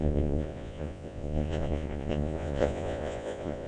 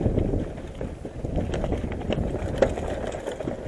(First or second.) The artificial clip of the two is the first